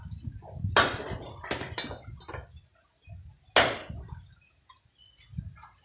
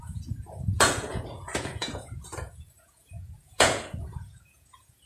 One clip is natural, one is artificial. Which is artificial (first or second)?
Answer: second